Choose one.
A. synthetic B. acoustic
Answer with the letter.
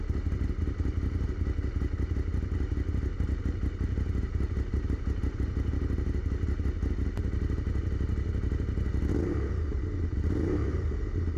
B